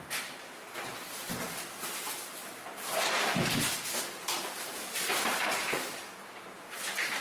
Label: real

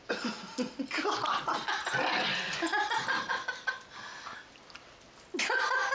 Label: real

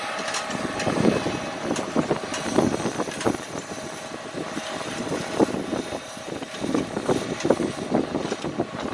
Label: real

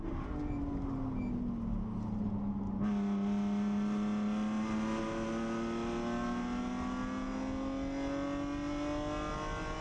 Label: real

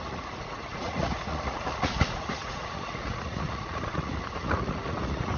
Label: fake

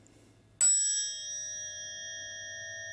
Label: real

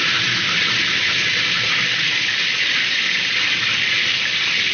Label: real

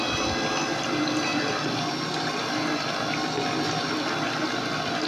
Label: real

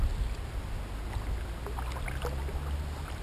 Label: real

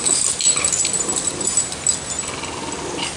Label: real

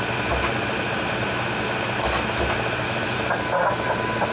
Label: real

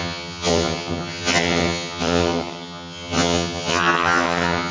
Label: fake